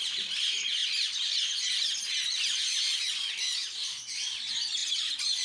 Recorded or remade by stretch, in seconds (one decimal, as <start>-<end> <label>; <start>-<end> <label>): 0.0-5.4 recorded